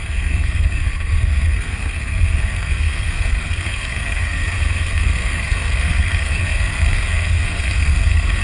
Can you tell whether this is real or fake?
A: fake